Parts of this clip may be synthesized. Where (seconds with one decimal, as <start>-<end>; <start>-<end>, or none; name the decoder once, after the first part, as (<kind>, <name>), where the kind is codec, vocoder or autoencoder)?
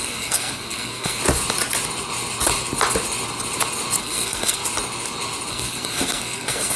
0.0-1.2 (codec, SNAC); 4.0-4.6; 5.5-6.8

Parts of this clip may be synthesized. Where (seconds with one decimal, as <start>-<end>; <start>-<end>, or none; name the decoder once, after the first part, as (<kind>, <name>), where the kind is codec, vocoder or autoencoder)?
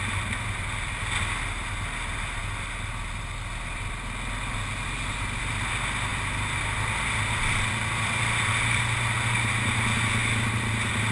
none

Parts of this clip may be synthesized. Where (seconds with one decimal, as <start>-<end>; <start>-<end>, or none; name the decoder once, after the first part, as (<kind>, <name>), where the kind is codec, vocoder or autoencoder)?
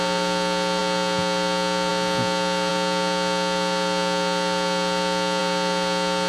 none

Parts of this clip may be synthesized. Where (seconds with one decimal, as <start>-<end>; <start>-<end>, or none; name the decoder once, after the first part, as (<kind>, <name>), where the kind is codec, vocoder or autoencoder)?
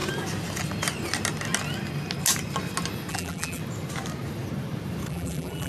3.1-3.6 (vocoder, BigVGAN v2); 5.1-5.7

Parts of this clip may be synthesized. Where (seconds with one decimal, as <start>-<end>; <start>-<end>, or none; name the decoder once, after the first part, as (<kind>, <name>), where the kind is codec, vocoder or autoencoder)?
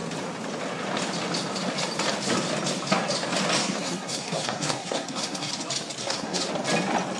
3.6-5.5 (codec, SNAC); 6.0-6.5